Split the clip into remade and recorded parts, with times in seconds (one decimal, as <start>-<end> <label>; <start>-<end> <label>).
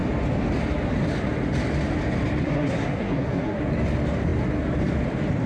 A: 0.0-2.4 recorded; 2.4-3.6 remade; 3.6-5.5 recorded